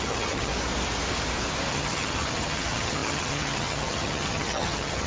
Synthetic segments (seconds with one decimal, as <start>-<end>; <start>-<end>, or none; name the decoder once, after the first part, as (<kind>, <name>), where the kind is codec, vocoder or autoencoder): 0.0-0.5 (vocoder, HiFi-GAN); 1.7-5.1